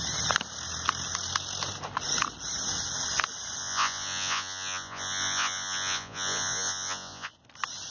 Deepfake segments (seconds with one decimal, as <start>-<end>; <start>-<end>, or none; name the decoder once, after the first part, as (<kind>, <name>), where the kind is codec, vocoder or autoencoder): 3.6-7.3 (vocoder, Vocos)